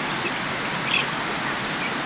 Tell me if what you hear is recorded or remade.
recorded